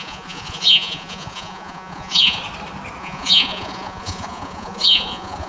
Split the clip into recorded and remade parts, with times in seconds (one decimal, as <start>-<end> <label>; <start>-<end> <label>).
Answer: 0.0-2.4 remade; 2.4-3.0 recorded; 3.0-5.5 remade